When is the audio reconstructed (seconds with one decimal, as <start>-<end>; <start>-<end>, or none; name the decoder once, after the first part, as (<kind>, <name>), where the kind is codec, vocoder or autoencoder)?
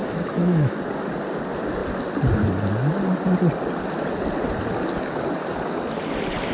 0.0-0.8 (autoencoder, DAC-VAE)